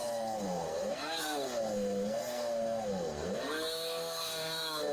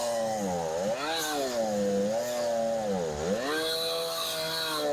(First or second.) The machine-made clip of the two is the first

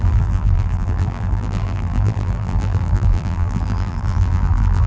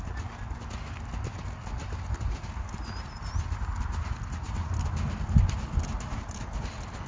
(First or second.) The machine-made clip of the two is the first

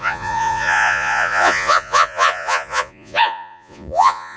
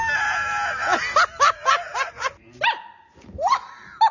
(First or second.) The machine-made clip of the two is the first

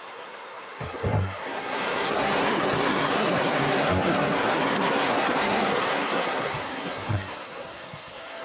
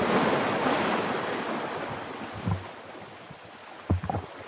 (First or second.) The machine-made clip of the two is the first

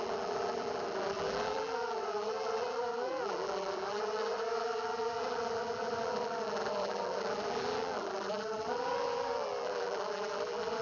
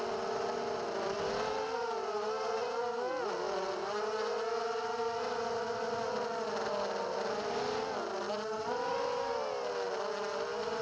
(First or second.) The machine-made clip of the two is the first